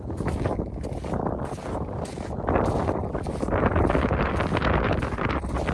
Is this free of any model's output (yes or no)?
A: yes